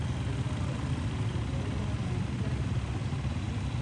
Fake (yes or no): no